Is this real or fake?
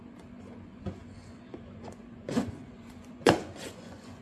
fake